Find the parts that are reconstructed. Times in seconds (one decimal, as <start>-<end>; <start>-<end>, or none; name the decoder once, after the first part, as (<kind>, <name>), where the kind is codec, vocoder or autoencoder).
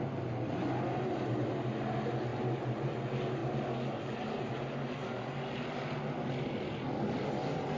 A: none